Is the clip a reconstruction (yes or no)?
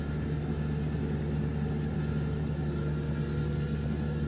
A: no